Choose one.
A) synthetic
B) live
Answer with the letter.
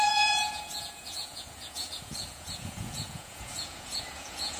A